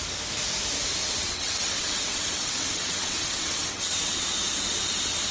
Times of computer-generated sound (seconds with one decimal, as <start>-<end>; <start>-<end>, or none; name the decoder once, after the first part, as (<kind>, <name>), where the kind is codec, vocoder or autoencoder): 1.0-4.2 (vocoder, WaveNeXt)